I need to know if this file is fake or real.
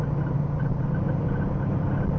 real